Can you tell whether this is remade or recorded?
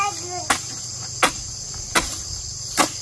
recorded